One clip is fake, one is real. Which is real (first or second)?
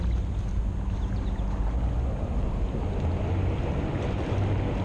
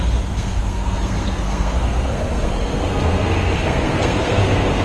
first